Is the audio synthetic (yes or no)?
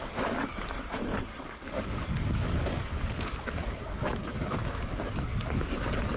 yes